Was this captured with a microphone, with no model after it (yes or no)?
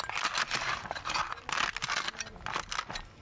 yes